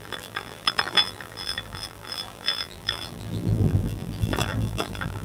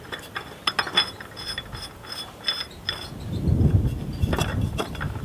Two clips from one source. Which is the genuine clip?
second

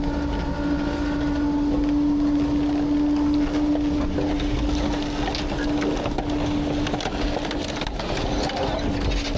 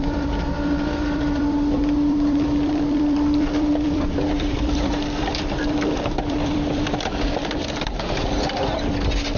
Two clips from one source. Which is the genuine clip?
first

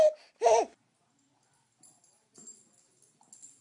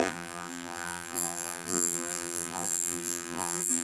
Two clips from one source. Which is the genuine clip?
first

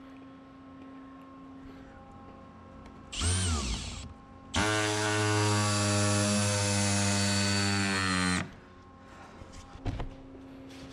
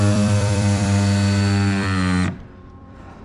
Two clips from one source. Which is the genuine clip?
first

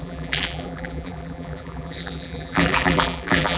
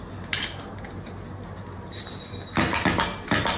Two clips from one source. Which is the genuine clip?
second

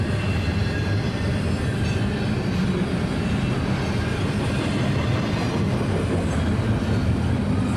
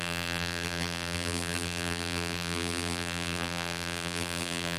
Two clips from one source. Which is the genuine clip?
first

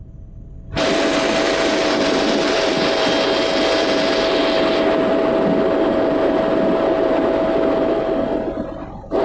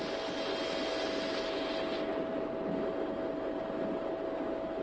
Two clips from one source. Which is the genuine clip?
second